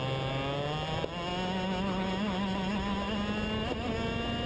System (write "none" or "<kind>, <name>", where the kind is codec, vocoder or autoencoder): none